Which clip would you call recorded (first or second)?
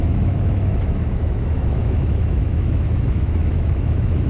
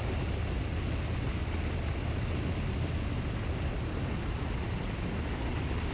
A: second